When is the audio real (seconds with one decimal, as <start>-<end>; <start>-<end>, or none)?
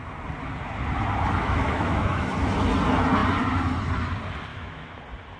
0.0-1.4; 2.3-4.5; 5.0-5.4